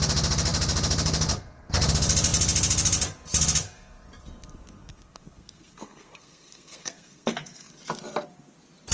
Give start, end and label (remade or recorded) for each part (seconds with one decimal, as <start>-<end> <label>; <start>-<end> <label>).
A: 0.0-4.8 recorded; 4.8-7.7 remade; 7.7-8.9 recorded